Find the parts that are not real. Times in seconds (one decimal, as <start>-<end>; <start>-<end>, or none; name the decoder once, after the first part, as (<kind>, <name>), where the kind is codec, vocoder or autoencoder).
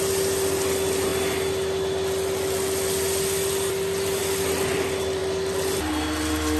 none